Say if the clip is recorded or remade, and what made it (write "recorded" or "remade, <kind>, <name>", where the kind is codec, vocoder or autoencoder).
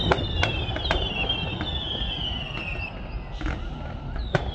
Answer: recorded